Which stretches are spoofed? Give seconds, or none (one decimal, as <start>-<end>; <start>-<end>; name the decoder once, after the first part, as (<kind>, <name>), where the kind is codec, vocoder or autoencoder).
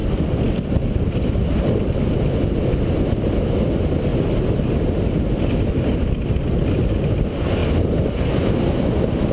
0.0-2.7 (vocoder, BigVGAN v2)